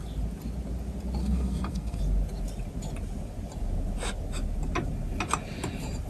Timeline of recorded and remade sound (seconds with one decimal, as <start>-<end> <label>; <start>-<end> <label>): 0.0-1.2 recorded; 1.2-2.0 remade; 2.0-6.1 recorded